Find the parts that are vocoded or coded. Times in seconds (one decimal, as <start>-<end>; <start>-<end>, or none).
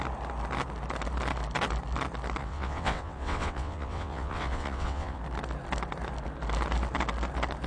2.4-5.2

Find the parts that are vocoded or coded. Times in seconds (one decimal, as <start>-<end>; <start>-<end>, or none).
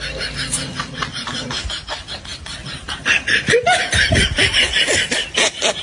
1.1-1.7; 2.3-5.8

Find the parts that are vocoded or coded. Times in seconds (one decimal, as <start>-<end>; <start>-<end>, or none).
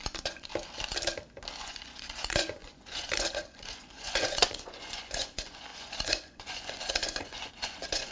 0.0-0.5; 1.6-8.1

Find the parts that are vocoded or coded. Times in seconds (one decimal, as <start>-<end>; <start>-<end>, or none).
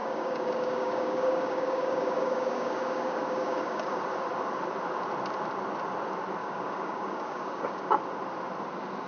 0.0-4.0; 6.4-8.0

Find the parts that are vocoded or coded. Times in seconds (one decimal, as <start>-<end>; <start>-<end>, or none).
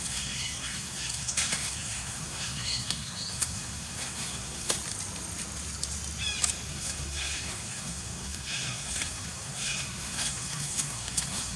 0.0-4.8; 6.7-11.6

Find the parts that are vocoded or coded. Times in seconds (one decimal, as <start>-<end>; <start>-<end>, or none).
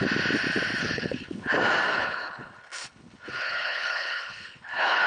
0.8-1.5; 1.9-5.1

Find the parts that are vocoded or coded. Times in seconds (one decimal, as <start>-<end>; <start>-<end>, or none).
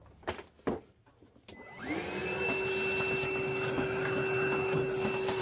none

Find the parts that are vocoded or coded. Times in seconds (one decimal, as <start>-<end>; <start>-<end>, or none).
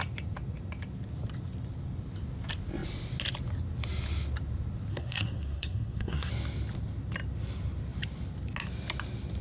4.9-6.3